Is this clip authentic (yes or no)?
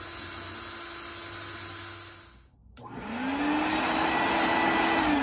yes